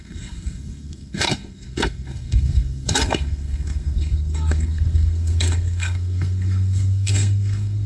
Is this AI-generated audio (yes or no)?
yes